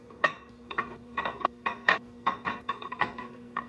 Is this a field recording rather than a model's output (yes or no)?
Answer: no